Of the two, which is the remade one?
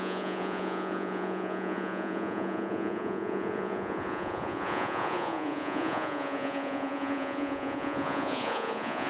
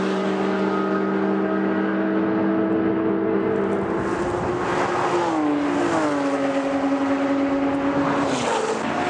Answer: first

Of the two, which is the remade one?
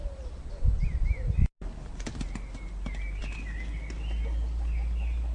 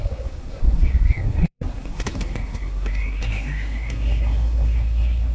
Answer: second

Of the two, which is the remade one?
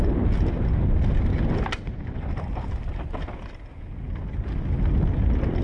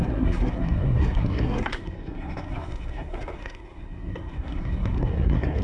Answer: second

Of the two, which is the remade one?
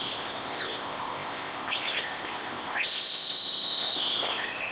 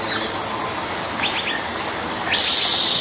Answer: first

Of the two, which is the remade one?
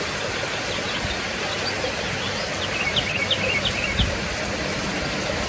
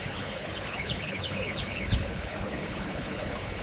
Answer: second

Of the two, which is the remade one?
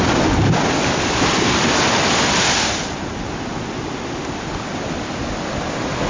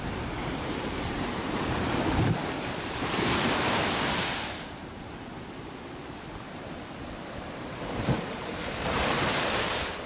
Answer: second